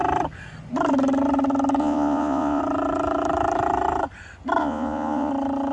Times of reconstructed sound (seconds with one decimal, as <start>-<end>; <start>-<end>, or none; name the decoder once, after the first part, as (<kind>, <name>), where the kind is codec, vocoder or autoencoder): 1.8-2.6 (vocoder, Vocos); 4.6-5.3